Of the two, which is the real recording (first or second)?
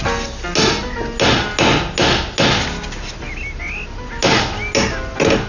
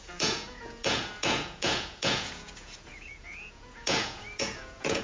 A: first